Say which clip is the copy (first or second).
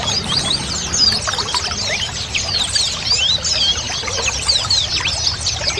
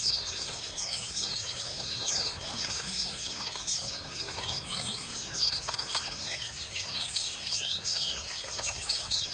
second